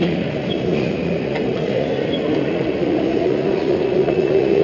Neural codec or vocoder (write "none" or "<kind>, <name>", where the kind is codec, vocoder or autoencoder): vocoder, Vocos